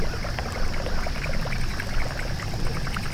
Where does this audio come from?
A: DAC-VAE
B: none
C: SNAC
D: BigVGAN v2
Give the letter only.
B